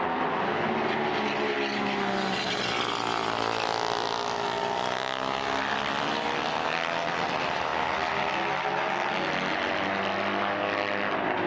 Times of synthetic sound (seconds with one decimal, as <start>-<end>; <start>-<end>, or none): none